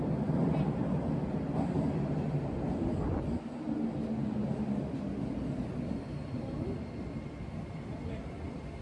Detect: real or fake real